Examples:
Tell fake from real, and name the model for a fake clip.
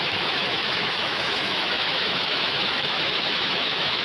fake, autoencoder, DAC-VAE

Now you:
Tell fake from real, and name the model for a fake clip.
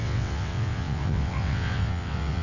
fake, vocoder, WaveNeXt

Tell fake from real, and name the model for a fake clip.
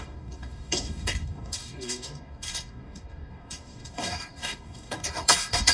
fake, codec, DAC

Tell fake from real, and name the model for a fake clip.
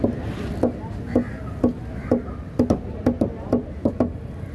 real